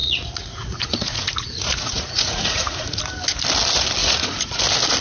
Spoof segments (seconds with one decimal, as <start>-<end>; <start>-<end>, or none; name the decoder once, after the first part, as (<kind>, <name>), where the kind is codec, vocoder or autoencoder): 0.0-3.0 (vocoder, Vocos); 4.0-4.6